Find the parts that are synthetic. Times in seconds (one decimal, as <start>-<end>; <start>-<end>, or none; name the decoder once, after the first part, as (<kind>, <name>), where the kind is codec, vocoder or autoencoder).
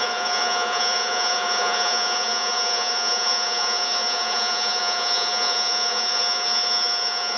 0.0-7.4 (vocoder, Vocos)